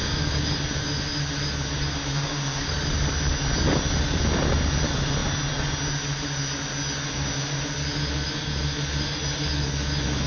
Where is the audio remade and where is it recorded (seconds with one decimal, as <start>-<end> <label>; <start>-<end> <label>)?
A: 0.0-0.5 remade; 0.5-2.1 recorded; 2.1-2.7 remade; 2.7-10.3 recorded